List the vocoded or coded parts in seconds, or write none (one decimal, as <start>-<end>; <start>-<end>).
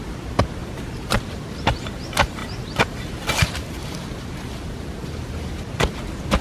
0.6-1.3; 2.4-6.4